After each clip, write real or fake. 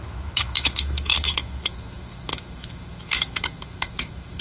fake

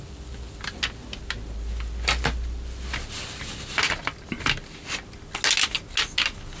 real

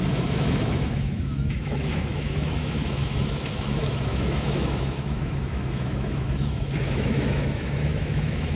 fake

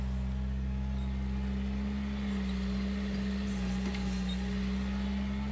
real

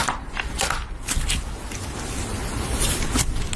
real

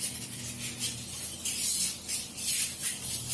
real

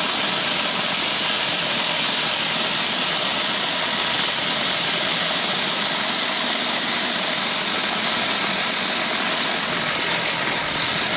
real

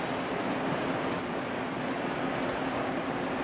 real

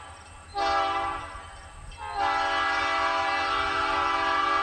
real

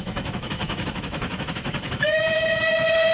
fake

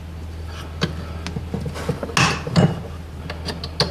real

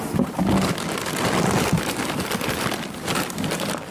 real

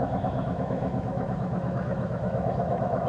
fake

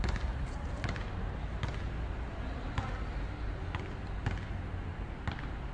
real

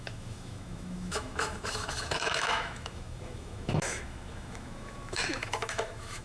fake